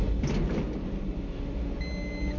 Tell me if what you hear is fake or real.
real